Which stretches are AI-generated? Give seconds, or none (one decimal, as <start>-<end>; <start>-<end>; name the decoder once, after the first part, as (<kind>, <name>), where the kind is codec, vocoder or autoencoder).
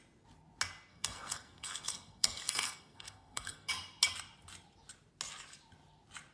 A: 0.9-3.7 (codec, SNAC)